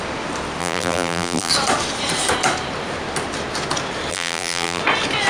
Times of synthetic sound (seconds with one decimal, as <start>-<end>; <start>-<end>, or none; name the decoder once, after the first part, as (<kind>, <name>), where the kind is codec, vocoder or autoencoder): 0.6-1.5 (vocoder, BigVGAN v2); 4.1-4.8